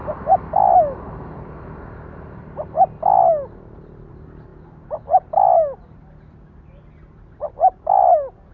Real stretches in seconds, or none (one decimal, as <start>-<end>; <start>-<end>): 0.0-4.5; 5.3-8.5